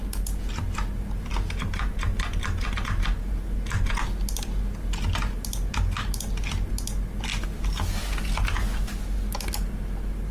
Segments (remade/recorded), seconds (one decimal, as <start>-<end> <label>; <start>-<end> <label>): 0.0-10.3 recorded